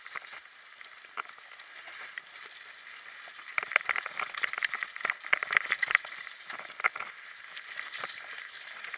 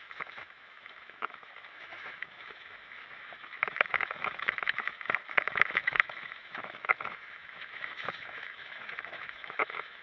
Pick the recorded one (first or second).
first